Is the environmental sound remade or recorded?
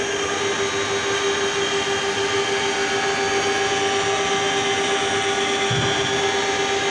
recorded